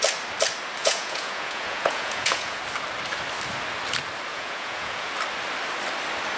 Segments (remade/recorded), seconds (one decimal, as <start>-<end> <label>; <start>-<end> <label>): 0.0-0.8 recorded; 0.8-2.6 remade; 2.6-4.3 recorded; 4.3-5.1 remade; 5.1-6.4 recorded